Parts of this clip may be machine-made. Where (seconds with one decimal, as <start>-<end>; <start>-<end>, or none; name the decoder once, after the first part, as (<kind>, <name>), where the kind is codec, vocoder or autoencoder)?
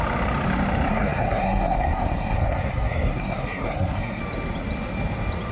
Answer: 0.9-4.2 (codec, SNAC)